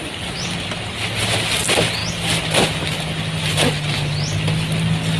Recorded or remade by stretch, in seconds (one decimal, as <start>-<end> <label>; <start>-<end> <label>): 0.0-5.2 recorded